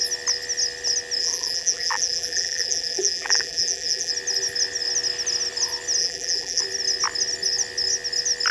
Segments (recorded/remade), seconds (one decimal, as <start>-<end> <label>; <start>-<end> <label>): 0.0-1.2 recorded; 1.2-4.1 remade; 4.1-6.0 recorded; 6.0-6.6 remade; 6.6-8.5 recorded

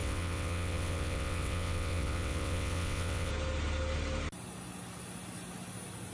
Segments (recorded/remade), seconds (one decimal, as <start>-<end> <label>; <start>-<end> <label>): 0.0-3.3 remade; 3.3-6.1 recorded

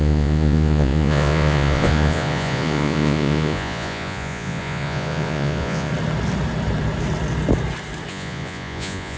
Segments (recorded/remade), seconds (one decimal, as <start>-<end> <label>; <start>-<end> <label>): 0.0-5.9 remade; 5.9-8.1 recorded; 8.1-9.2 remade

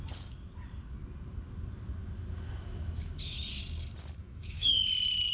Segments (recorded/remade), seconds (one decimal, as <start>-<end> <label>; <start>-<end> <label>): 0.0-4.2 recorded; 4.2-4.7 remade; 4.7-5.3 recorded

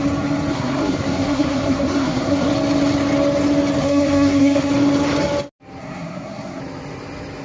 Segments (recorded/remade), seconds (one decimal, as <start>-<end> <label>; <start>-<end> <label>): 0.0-0.5 recorded; 0.5-2.5 remade; 2.5-3.8 recorded; 3.8-4.7 remade; 4.7-5.8 recorded; 5.8-6.6 remade; 6.6-7.4 recorded

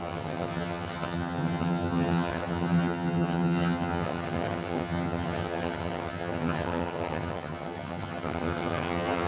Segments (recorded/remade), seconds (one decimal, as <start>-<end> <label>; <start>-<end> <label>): 0.0-9.3 remade

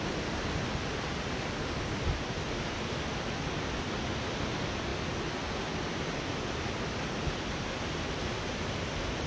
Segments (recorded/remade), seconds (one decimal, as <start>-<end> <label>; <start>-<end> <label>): 0.0-9.3 recorded

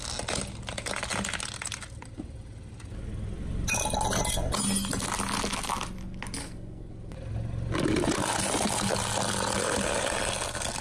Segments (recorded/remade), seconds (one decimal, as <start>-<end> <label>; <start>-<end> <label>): 0.0-6.4 recorded; 6.4-6.9 remade; 6.9-10.8 recorded